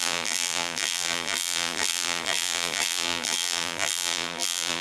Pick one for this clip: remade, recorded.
remade